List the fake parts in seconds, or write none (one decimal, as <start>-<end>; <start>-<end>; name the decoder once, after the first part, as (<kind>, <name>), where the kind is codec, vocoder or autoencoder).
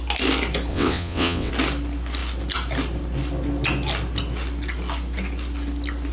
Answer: 0.7-1.5 (vocoder, WaveNeXt)